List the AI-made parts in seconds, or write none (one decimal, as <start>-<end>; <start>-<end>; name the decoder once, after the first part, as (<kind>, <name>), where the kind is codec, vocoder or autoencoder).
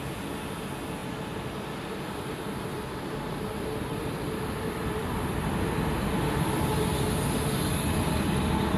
1.0-4.9 (vocoder, BigVGAN v2)